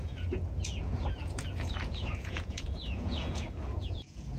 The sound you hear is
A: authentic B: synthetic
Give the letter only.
B